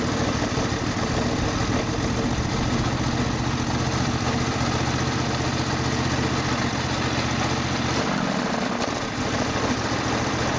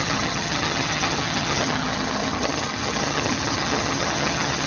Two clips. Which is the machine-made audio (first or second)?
second